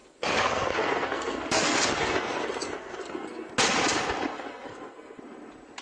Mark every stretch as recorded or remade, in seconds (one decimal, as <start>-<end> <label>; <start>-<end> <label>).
0.0-3.5 remade; 3.5-4.3 recorded; 4.3-5.2 remade; 5.2-5.8 recorded